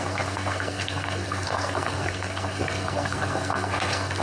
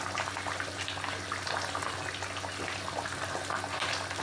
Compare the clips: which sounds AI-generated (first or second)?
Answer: first